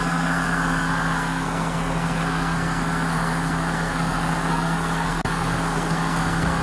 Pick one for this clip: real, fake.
fake